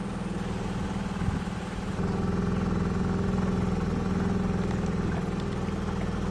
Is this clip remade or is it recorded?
recorded